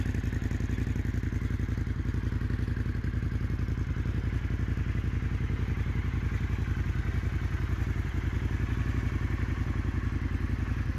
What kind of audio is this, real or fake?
real